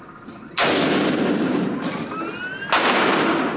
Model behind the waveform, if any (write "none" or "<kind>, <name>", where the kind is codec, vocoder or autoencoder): none